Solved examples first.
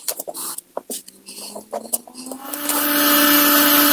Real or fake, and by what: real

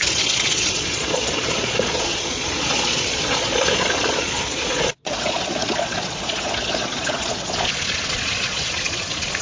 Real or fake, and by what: fake, vocoder, Vocos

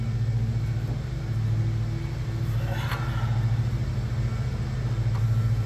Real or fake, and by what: real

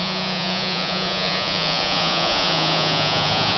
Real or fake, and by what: fake, vocoder, Vocos